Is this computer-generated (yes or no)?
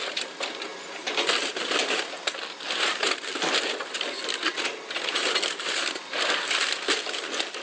no